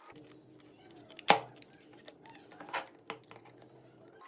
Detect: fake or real real